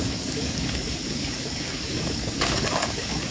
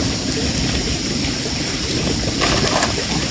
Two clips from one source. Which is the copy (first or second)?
first